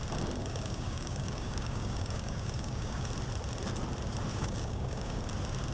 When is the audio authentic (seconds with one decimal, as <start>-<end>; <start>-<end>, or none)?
0.0-0.4; 3.1-4.3; 5.2-5.7